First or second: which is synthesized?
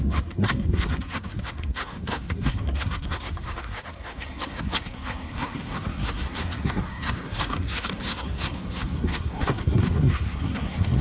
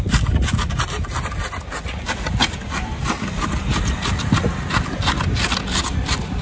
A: first